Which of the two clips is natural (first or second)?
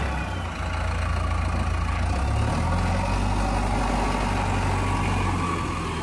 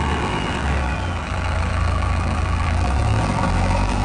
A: first